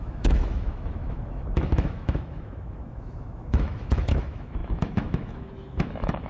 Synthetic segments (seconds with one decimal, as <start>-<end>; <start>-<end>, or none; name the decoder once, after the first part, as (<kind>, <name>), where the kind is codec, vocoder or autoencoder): 0.0-6.3 (autoencoder, DAC-VAE)